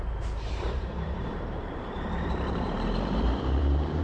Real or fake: fake